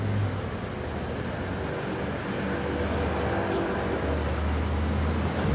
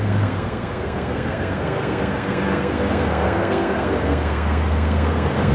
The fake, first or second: second